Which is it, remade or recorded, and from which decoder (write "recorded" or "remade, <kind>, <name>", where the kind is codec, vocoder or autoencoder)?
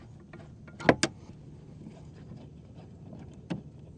recorded